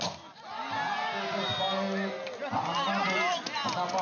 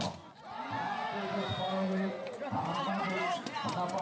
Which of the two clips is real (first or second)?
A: first